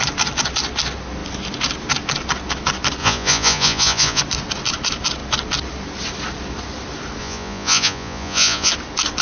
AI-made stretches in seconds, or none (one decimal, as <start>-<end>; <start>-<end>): 3.0-4.2; 7.2-8.7